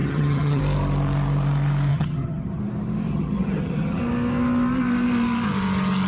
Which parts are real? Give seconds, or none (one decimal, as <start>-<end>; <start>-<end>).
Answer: 0.6-1.9; 2.6-3.1; 4.0-6.1